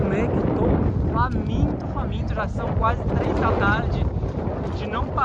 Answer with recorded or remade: recorded